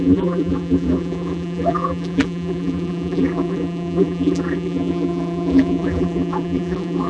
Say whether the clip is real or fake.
fake